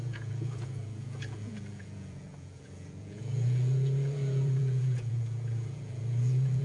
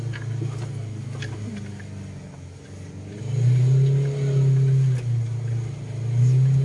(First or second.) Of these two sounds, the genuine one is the second